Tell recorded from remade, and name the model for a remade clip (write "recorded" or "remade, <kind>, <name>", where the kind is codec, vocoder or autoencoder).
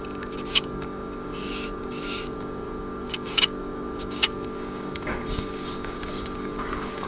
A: remade, codec, DAC